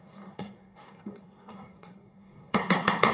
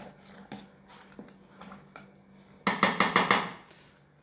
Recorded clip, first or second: second